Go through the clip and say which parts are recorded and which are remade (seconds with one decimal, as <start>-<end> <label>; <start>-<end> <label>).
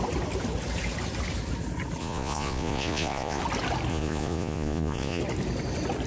0.0-2.0 recorded; 2.0-3.4 remade; 3.4-3.9 recorded; 3.9-5.2 remade; 5.2-6.1 recorded